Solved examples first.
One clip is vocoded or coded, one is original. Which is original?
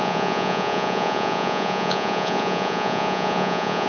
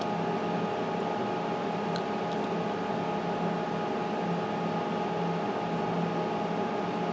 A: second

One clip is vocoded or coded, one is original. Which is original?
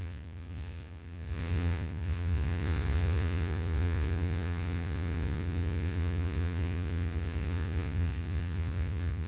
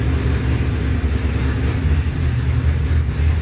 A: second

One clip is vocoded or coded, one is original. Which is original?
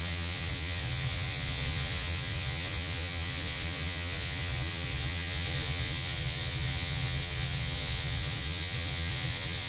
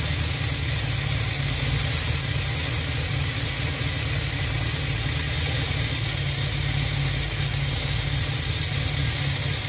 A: second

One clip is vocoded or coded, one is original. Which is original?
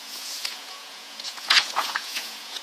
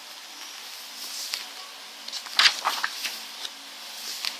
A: second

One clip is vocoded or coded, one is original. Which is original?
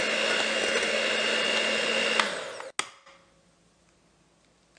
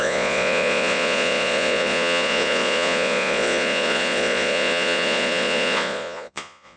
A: first